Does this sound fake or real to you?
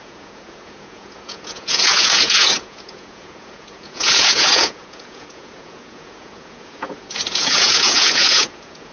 fake